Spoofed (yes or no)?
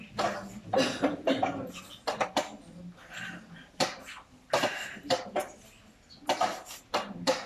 no